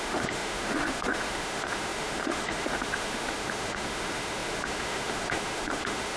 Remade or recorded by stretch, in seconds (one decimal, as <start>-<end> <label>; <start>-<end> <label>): 0.0-6.2 remade